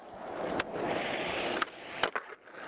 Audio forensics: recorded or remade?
recorded